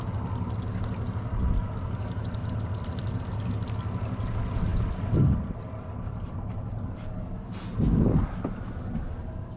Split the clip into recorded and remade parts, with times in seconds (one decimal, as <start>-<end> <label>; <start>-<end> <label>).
0.0-2.4 recorded; 2.4-3.2 remade; 3.2-4.7 recorded; 4.7-7.5 remade; 7.5-9.6 recorded